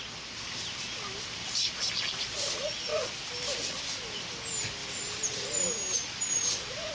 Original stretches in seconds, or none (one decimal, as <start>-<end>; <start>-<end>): 0.0-4.8; 5.7-6.9

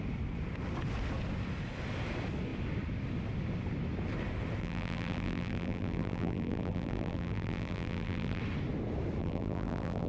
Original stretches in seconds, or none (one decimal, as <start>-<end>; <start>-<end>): 0.0-4.6; 8.4-9.2

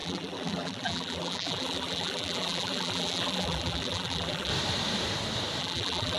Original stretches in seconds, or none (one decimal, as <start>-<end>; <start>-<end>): 4.5-5.6